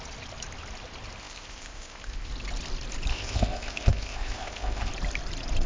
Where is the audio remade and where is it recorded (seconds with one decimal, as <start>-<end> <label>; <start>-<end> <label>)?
0.0-1.2 recorded; 1.2-2.3 remade; 2.3-3.1 recorded; 3.1-4.9 remade; 4.9-5.7 recorded